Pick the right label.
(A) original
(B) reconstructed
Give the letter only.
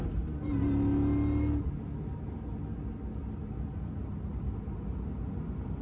A